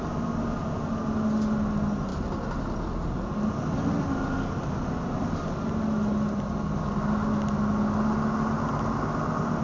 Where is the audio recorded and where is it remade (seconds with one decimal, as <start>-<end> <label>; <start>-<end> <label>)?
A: 0.0-9.6 recorded